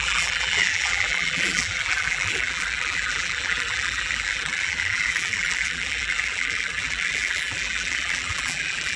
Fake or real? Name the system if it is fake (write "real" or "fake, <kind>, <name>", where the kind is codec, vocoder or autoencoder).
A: fake, vocoder, BigVGAN v2